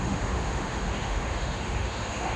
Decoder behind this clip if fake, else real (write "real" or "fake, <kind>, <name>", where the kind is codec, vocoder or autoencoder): fake, autoencoder, DAC-VAE